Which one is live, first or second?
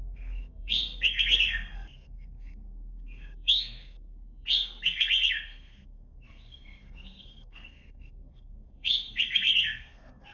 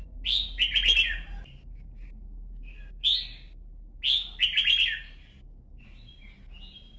second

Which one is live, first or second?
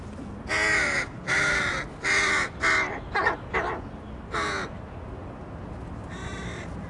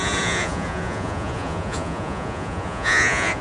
first